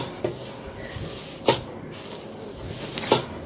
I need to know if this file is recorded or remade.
recorded